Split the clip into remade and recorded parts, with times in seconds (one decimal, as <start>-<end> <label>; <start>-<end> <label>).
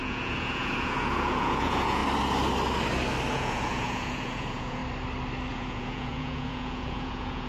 0.0-2.0 remade; 2.0-3.3 recorded; 3.3-4.8 remade; 4.8-5.5 recorded; 5.5-7.5 remade